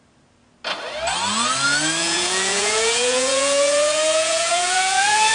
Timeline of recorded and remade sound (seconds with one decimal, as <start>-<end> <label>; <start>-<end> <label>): 0.0-2.0 recorded; 2.0-5.3 remade